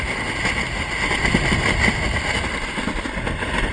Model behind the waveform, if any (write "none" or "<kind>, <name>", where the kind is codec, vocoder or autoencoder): none